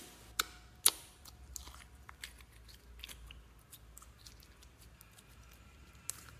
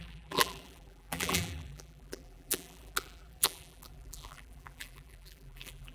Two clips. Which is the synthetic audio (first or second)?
second